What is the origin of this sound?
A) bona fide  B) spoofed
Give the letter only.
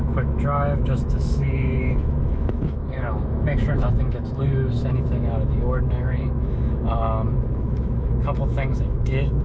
B